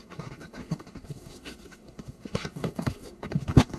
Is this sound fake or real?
fake